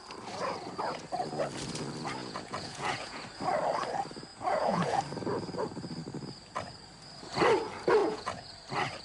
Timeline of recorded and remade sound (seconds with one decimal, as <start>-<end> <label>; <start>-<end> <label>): 0.0-2.2 recorded; 2.2-3.2 remade; 3.2-4.3 recorded; 4.3-5.0 remade; 5.0-8.0 recorded; 8.0-8.5 remade; 8.5-9.0 recorded